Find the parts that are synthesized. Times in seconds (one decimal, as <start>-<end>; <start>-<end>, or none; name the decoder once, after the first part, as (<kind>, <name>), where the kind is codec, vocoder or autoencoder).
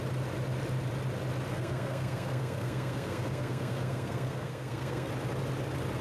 1.5-5.1 (codec, SNAC)